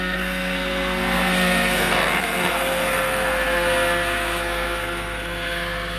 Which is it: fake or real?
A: fake